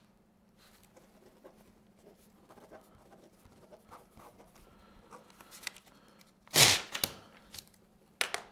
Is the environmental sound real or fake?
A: real